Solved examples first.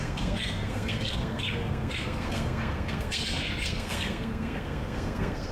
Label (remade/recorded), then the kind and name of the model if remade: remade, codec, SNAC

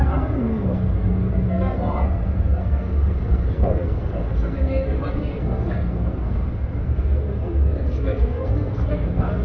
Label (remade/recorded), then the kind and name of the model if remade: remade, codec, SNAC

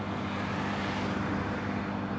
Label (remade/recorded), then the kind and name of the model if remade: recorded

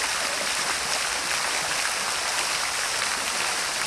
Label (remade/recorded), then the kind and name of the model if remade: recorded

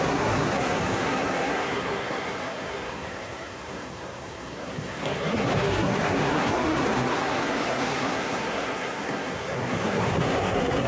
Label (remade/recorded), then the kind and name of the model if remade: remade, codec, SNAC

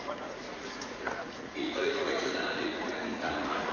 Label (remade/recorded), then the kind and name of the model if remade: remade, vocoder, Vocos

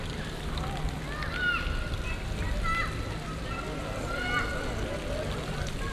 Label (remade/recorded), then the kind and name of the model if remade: recorded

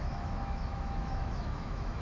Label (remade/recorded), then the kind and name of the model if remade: remade, autoencoder, DAC-VAE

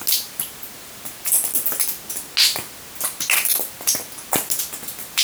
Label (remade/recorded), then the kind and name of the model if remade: recorded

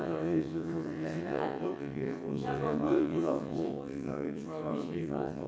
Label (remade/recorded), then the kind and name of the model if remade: remade, vocoder, WaveNeXt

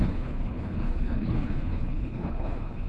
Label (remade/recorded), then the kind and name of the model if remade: remade, codec, HILCodec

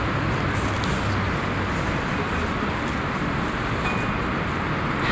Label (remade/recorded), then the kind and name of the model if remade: recorded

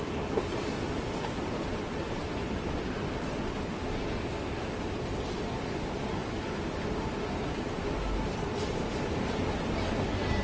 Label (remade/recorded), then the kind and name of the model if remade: recorded